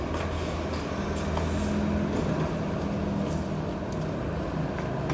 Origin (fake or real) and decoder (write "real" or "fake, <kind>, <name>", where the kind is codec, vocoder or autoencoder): real